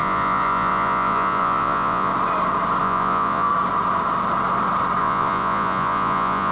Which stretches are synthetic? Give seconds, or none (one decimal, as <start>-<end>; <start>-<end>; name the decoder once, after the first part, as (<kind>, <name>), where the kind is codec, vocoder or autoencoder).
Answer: 0.0-2.1 (vocoder, Vocos); 2.8-3.5; 5.0-6.5